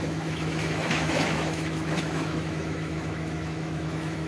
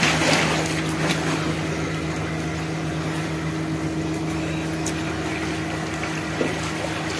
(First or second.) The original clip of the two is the second